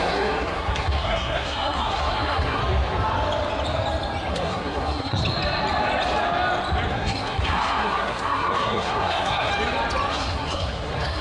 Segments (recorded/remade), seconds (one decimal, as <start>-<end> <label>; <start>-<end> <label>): 0.0-2.6 remade; 2.6-4.3 recorded; 4.3-5.2 remade; 5.2-6.9 recorded; 6.9-9.5 remade; 9.5-10.1 recorded; 10.1-11.2 remade